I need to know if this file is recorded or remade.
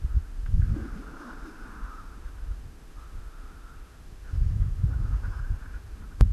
remade